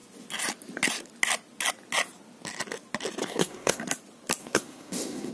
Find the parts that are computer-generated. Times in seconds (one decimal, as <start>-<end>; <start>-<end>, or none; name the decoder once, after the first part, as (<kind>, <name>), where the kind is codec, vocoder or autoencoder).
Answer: 3.2-3.8 (codec, SNAC); 4.4-5.3